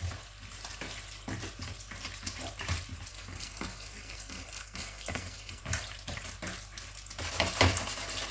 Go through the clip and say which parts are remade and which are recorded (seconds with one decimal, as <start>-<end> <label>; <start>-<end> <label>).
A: 0.0-3.1 recorded; 3.1-5.6 remade; 5.6-8.3 recorded